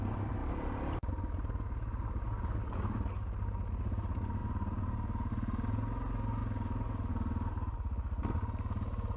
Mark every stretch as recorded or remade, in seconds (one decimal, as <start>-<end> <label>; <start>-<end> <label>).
0.0-0.4 recorded; 0.4-1.2 remade; 1.2-9.2 recorded